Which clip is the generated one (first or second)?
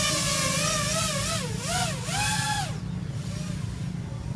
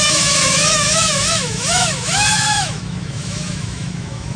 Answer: second